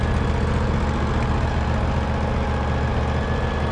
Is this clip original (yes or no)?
yes